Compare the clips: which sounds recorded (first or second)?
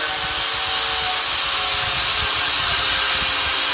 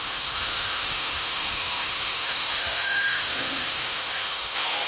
first